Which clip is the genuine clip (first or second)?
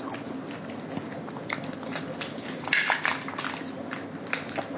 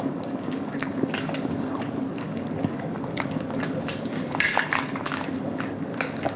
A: first